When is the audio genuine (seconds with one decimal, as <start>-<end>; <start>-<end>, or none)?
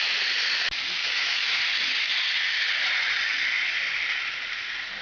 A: 0.0-1.0; 1.6-5.0